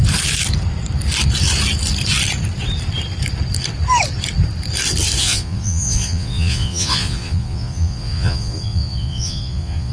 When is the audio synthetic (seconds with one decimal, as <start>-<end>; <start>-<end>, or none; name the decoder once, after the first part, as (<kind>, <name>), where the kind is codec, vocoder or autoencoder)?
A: 5.2-9.9 (vocoder, Vocos)